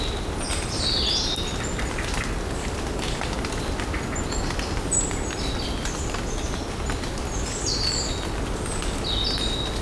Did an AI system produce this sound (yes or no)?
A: no